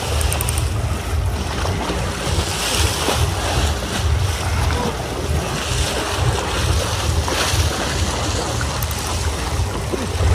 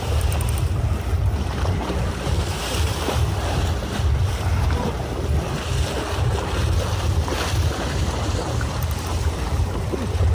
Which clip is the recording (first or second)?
first